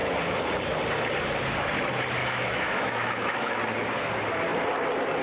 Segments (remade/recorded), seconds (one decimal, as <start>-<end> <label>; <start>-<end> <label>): 0.0-0.5 remade; 0.5-2.2 recorded; 2.2-3.5 remade; 3.5-5.2 recorded